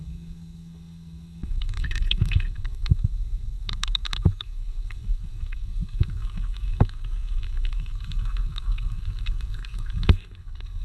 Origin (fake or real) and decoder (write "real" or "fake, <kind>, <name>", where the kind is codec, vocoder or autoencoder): fake, codec, SNAC